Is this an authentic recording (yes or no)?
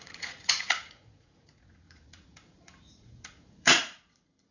no